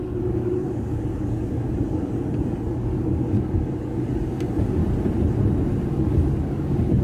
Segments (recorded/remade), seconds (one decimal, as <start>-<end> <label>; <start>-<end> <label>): 0.0-4.8 remade; 4.8-5.9 recorded; 5.9-7.0 remade